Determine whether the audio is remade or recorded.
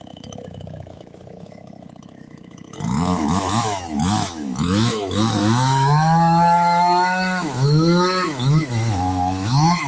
remade